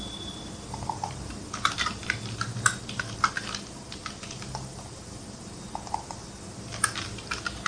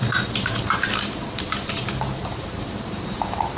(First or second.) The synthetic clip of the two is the second